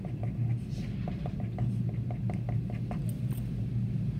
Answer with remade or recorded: recorded